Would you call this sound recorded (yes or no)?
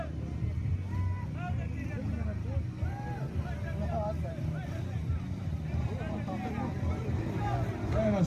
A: yes